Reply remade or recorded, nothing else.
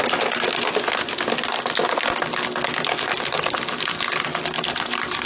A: recorded